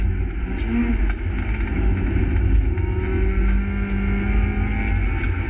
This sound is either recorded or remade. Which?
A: recorded